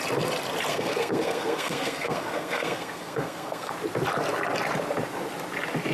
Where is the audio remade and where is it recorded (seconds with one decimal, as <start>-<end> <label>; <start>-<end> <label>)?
0.0-0.7 recorded; 0.7-3.7 remade; 3.7-5.9 recorded